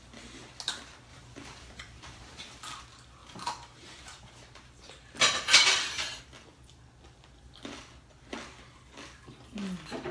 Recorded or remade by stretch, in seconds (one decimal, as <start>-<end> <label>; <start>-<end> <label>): 0.0-1.1 recorded; 1.1-2.4 remade; 2.4-3.2 recorded; 3.2-6.2 remade; 6.2-10.1 recorded